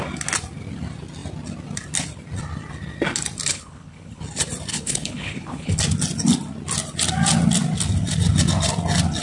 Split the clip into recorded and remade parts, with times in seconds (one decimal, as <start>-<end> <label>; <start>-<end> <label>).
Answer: 0.0-3.5 recorded; 3.5-4.2 remade; 4.2-4.7 recorded; 4.7-5.8 remade; 5.8-9.2 recorded